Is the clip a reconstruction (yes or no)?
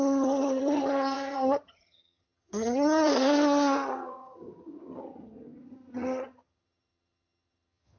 yes